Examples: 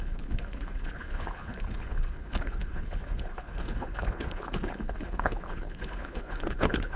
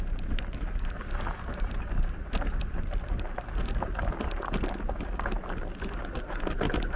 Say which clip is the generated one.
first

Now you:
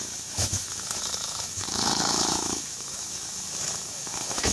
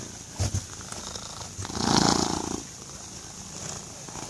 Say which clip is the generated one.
first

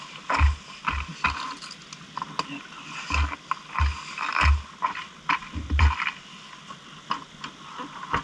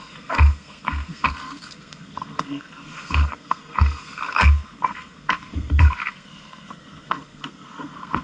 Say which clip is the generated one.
second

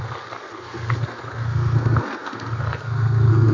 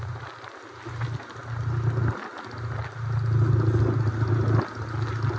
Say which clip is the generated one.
first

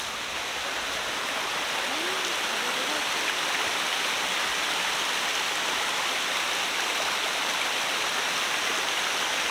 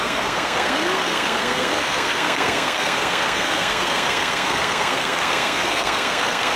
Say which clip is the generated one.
second